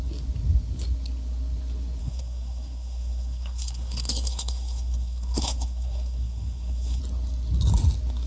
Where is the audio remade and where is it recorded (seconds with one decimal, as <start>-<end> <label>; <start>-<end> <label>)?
0.0-2.0 recorded; 2.0-7.0 remade; 7.0-8.3 recorded